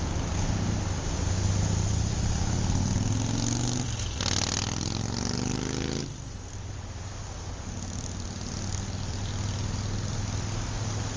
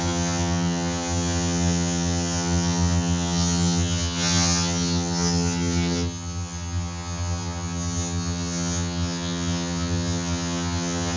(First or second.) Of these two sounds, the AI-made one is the second